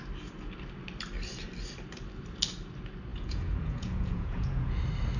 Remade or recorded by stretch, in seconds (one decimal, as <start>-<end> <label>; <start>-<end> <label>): 0.0-3.1 recorded; 3.1-4.8 remade; 4.8-5.2 recorded